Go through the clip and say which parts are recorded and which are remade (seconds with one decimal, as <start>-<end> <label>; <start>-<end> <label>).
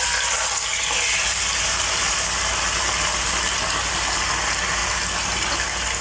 0.0-6.0 recorded